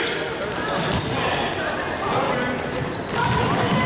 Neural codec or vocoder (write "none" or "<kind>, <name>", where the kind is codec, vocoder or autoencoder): none